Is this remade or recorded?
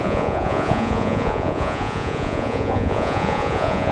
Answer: remade